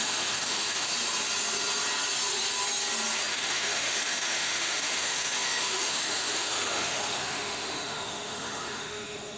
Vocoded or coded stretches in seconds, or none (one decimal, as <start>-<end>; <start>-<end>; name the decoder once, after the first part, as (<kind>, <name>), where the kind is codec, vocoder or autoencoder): 0.0-0.9 (autoencoder, DAC-VAE); 3.3-9.4